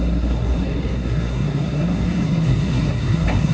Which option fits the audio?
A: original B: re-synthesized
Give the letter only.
B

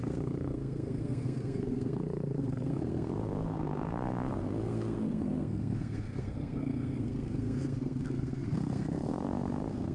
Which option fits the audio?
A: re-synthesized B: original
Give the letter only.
A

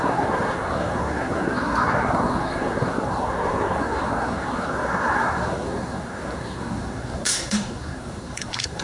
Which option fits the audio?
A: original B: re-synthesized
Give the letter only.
B